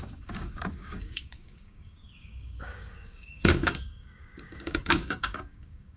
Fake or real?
fake